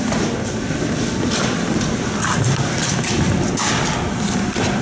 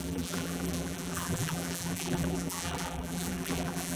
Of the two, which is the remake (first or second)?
second